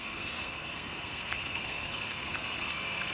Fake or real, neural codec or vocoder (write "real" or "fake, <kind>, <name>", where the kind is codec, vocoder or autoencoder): fake, codec, SNAC